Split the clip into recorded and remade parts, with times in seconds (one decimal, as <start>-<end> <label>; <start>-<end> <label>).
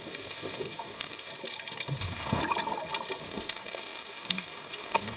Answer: 0.0-1.3 remade; 1.3-2.0 recorded; 2.0-2.4 remade; 2.4-3.2 recorded; 3.2-5.2 remade